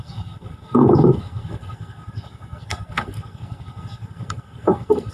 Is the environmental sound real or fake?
fake